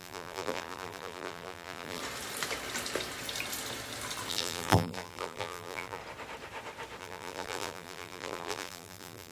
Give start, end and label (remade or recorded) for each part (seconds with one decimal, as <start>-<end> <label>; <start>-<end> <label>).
0.0-2.0 remade; 2.0-4.3 recorded; 4.3-6.0 remade; 6.0-7.0 recorded; 7.0-9.3 remade